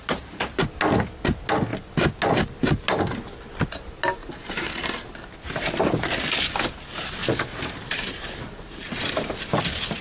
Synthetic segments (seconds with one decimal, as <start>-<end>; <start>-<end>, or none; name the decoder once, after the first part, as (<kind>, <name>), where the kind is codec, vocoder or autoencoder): 4.2-4.7 (vocoder, BigVGAN v2); 7.2-8.6